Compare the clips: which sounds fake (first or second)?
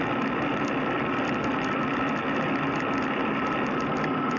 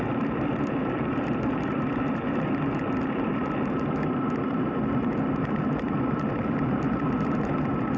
second